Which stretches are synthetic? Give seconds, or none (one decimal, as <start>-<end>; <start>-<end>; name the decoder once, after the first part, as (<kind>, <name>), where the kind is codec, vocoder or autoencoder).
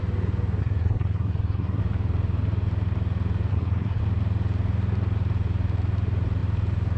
0.6-1.8 (codec, SNAC); 3.5-4.0